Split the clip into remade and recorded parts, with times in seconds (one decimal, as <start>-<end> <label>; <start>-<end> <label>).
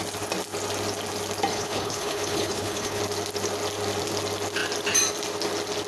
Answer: 0.0-1.5 recorded; 1.5-3.0 remade; 3.0-5.9 recorded